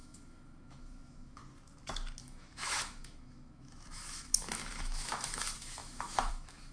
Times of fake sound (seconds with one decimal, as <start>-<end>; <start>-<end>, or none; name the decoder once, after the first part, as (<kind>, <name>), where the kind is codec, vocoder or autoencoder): 0.0-1.4 (autoencoder, DAC-VAE); 2.2-6.7